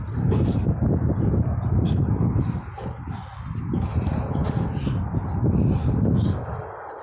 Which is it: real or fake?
real